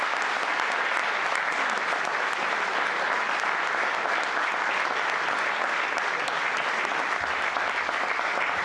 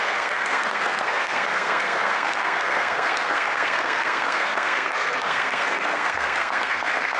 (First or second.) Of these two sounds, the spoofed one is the second